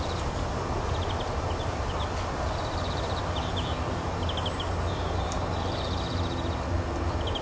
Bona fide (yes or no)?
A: yes